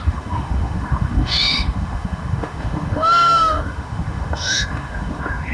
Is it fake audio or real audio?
fake